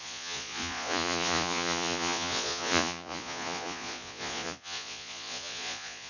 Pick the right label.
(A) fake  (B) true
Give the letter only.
A